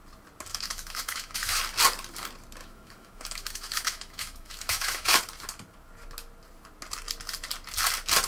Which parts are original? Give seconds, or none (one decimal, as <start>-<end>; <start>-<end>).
0.0-0.5; 1.6-2.6; 5.2-8.3